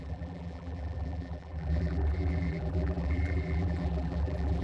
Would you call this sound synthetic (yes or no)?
yes